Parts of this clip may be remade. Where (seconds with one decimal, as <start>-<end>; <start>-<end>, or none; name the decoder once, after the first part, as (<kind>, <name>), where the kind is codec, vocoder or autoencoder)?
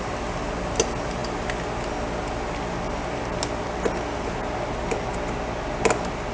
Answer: none